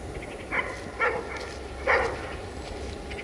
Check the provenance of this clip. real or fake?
real